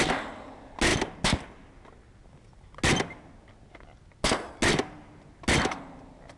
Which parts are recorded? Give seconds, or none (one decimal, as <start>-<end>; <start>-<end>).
0.0-6.4